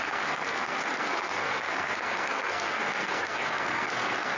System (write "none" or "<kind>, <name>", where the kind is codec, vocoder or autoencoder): codec, SNAC